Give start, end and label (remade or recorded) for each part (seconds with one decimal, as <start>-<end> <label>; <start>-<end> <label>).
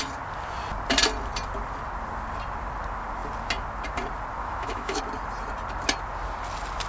0.0-4.4 recorded; 4.4-5.0 remade; 5.0-6.9 recorded